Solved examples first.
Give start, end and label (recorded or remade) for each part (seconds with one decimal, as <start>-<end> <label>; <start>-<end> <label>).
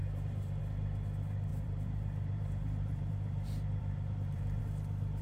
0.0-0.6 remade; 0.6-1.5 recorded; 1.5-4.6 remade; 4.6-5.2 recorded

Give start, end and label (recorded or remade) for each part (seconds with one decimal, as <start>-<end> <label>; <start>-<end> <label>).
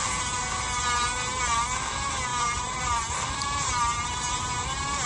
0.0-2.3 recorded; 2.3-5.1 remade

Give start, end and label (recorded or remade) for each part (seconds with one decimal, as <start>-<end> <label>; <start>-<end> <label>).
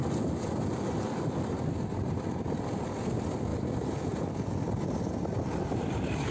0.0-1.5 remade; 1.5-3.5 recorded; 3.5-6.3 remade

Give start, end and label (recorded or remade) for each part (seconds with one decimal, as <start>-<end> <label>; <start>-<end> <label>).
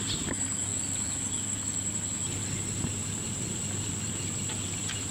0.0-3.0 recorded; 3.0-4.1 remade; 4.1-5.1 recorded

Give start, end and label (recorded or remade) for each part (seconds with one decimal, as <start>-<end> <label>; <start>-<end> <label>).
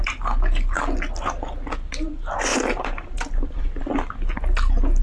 0.0-2.5 recorded; 2.5-3.8 remade; 3.8-5.0 recorded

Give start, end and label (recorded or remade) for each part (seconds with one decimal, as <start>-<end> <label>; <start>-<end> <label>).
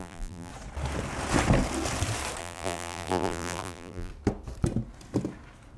0.0-0.5 remade; 0.5-2.4 recorded; 2.4-4.1 remade; 4.1-5.8 recorded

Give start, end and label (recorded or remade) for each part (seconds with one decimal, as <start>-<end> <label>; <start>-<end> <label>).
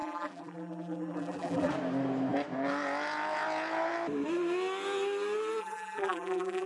0.0-1.7 remade; 1.7-5.6 recorded; 5.6-6.7 remade